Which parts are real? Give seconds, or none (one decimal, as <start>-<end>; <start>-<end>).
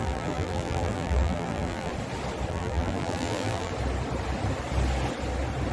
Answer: 1.9-2.5; 3.7-5.7